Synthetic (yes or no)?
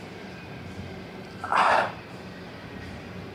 yes